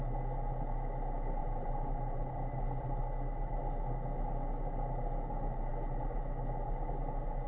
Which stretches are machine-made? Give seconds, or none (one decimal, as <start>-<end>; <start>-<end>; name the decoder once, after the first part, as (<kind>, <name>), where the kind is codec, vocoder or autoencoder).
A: 1.4-3.0 (vocoder, BigVGAN v2)